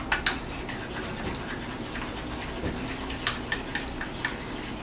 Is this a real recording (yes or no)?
yes